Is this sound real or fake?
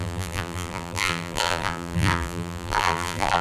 fake